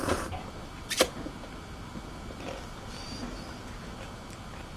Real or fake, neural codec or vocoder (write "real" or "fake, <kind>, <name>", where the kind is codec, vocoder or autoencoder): fake, vocoder, BigVGAN v2